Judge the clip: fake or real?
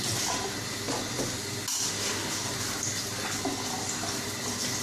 real